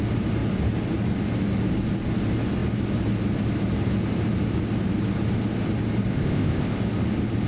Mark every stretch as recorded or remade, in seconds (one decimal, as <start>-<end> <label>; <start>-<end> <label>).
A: 0.0-6.1 recorded; 6.1-6.8 remade; 6.8-7.5 recorded